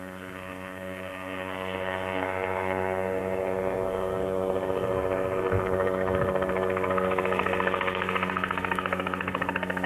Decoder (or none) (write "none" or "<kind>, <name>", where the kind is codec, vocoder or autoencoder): codec, SNAC